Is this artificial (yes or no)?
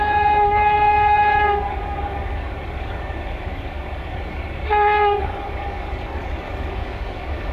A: yes